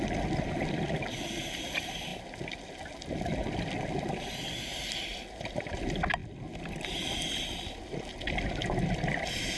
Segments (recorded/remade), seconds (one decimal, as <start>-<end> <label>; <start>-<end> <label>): 0.0-9.6 recorded